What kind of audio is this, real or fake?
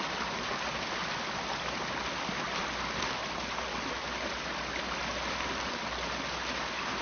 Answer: real